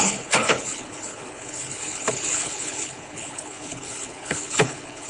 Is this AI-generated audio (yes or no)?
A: yes